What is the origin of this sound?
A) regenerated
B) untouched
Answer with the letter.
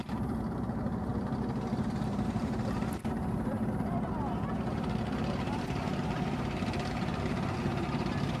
A